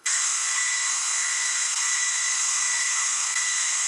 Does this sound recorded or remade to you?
remade